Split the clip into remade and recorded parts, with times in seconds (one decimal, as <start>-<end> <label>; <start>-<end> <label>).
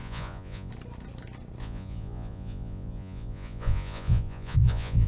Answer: 0.0-0.7 remade; 0.7-1.6 recorded; 1.6-5.1 remade